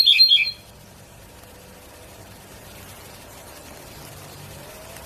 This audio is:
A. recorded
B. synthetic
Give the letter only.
B